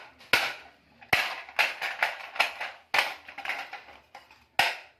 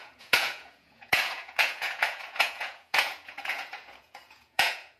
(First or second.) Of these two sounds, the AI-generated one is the second